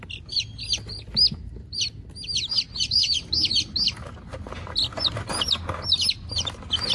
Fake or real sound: real